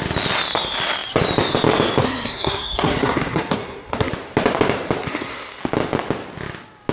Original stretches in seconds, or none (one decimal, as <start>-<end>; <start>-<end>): 0.0-2.0; 4.1-5.0; 5.6-6.9